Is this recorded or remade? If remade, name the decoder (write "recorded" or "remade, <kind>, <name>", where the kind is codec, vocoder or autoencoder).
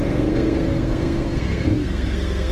remade, codec, SNAC